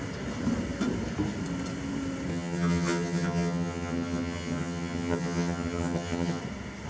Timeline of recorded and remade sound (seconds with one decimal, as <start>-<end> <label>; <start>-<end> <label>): 0.0-2.3 recorded; 2.3-6.4 remade; 6.4-6.9 recorded